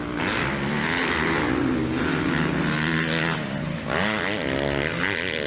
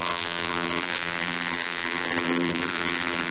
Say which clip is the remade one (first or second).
second